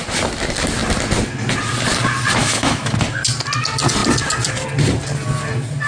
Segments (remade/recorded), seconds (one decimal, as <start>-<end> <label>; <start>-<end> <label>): 0.0-2.4 recorded; 2.4-2.9 remade; 2.9-5.9 recorded